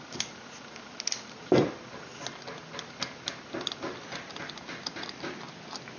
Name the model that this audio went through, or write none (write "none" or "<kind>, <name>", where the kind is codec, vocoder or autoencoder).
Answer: none